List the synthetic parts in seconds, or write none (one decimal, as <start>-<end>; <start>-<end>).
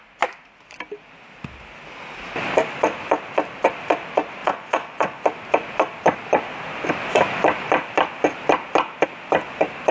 4.4-5.2